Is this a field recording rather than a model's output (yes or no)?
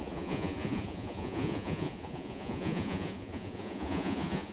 no